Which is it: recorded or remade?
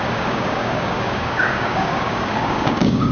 remade